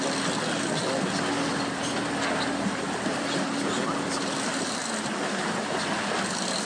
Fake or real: real